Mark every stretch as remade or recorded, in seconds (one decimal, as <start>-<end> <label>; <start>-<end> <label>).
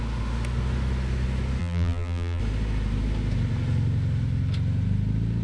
0.0-1.6 recorded; 1.6-2.4 remade; 2.4-5.4 recorded